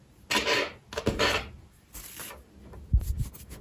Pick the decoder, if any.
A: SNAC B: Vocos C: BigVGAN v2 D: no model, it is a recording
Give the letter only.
D